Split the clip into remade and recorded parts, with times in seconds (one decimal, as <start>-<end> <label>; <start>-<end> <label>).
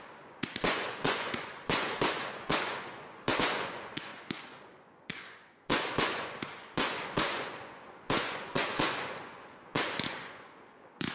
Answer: 0.0-11.1 remade